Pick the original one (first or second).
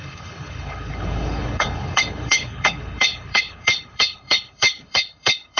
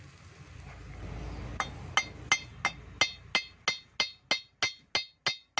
second